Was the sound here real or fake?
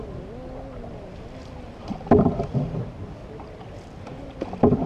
real